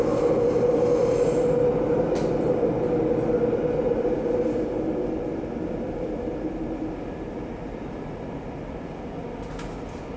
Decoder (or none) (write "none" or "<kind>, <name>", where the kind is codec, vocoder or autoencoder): none